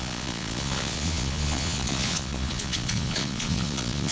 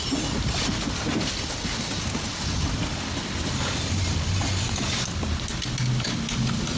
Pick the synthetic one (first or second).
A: first